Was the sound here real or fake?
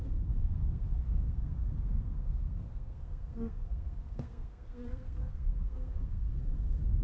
fake